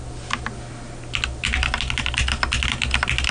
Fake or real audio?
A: real